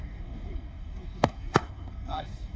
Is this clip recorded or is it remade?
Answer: remade